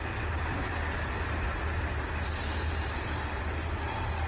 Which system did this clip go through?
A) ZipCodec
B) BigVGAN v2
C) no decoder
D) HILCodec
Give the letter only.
C